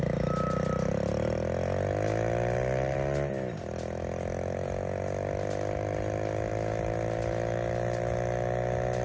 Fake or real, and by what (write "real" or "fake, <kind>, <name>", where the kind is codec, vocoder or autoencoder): real